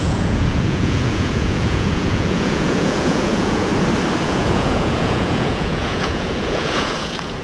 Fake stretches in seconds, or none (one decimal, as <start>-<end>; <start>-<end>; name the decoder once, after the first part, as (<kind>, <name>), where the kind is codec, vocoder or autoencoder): 0.0-3.7 (vocoder, Vocos); 4.2-7.4